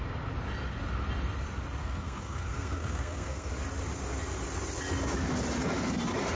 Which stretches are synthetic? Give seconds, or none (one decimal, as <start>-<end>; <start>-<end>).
1.8-3.5